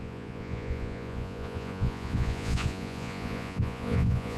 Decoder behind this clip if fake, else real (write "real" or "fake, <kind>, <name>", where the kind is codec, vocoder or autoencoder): fake, vocoder, Vocos